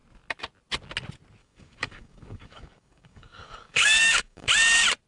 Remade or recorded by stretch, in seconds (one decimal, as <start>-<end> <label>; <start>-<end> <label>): 0.0-1.4 recorded; 1.4-4.5 remade; 4.5-5.1 recorded